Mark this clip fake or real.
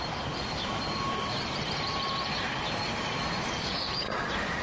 fake